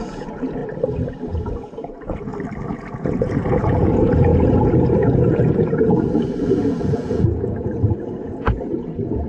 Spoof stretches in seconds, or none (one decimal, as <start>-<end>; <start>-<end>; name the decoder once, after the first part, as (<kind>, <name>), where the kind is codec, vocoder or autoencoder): 0.0-0.6 (vocoder, Vocos); 1.3-2.3; 2.8-9.3